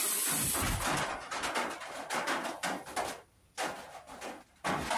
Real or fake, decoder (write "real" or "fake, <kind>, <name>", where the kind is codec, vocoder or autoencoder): real